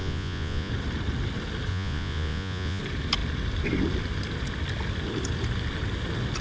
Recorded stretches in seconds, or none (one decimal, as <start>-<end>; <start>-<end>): 0.7-1.7; 2.8-6.4

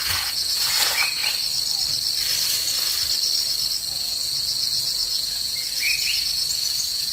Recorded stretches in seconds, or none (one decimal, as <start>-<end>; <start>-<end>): 1.2-3.8

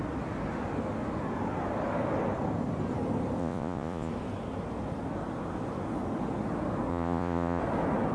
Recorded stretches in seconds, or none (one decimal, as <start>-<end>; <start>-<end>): 0.0-3.4; 4.1-6.9; 7.6-8.1

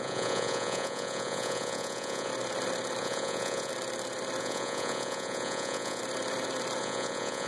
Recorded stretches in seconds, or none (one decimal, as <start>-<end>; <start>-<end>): 2.3-3.0; 3.7-4.4; 6.0-6.8

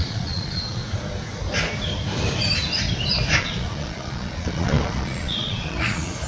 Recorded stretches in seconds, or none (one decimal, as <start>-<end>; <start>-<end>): 0.8-3.4